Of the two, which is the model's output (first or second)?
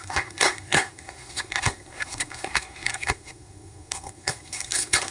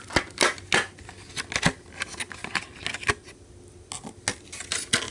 first